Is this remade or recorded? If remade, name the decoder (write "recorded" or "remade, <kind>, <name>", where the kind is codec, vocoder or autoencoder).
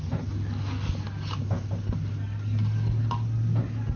recorded